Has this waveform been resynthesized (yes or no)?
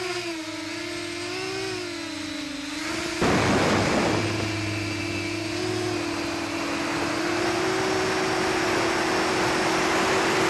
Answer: no